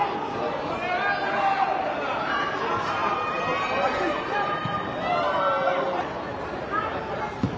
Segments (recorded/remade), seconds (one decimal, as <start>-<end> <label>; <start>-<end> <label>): 0.0-3.0 recorded; 3.0-6.4 remade; 6.4-7.6 recorded